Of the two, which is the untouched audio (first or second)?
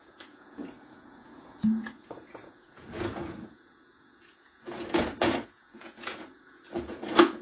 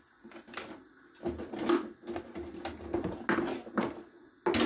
second